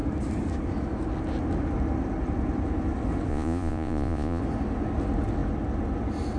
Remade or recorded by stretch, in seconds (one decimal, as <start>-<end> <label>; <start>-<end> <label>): 0.0-3.3 recorded; 3.3-4.4 remade; 4.4-6.4 recorded